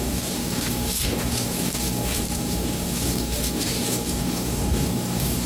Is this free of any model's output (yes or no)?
no